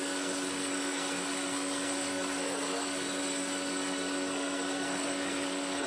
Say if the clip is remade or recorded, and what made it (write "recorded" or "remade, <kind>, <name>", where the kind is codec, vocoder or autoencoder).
remade, codec, SNAC